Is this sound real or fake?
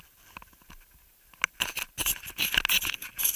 real